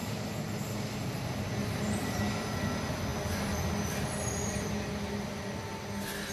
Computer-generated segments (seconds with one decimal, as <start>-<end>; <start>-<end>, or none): 0.0-0.5; 1.6-2.2

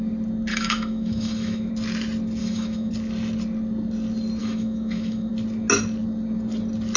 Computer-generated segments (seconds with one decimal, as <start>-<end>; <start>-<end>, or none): 0.5-1.7; 2.4-2.9; 4.4-5.3